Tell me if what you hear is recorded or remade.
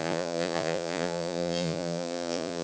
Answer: remade